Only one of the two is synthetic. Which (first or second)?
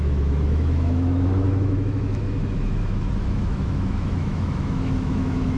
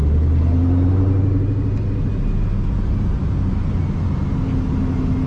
first